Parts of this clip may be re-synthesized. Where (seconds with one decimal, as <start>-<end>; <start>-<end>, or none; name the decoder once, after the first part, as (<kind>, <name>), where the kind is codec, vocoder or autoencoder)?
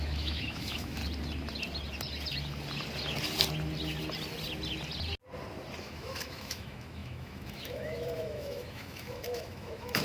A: 0.0-1.0 (autoencoder, DAC-VAE); 5.8-10.0